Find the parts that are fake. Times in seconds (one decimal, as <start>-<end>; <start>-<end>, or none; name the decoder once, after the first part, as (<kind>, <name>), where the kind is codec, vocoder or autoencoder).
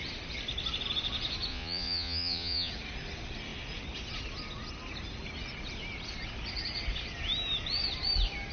1.5-2.7 (vocoder, Vocos)